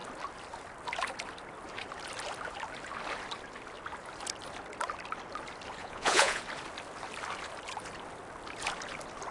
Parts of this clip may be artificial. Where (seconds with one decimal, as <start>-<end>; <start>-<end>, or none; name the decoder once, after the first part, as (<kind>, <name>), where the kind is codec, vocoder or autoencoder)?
5.8-6.4 (vocoder, Vocos)